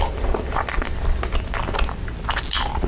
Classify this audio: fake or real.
real